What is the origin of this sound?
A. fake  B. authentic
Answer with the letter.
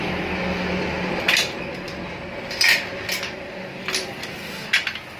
B